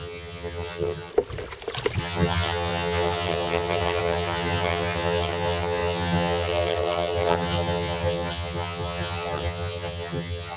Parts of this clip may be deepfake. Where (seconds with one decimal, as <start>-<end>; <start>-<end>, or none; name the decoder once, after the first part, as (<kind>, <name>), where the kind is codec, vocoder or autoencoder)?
0.0-1.1 (vocoder, HiFi-GAN); 2.0-10.6